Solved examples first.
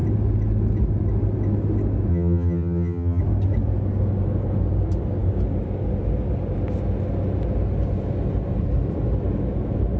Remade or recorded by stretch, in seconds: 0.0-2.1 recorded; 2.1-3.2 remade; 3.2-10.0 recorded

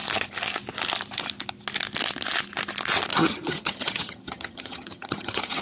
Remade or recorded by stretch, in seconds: 0.0-3.1 recorded; 3.1-5.6 remade

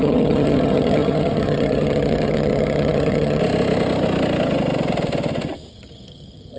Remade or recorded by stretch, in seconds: 0.0-3.4 remade; 3.4-5.7 recorded; 5.7-6.6 remade

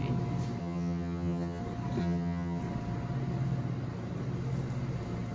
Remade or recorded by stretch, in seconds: 0.0-0.6 recorded; 0.6-1.6 remade; 1.6-2.0 recorded; 2.0-2.6 remade; 2.6-5.3 recorded

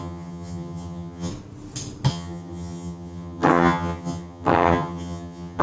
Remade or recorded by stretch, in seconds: 0.0-1.3 remade; 1.3-2.1 recorded; 2.1-5.6 remade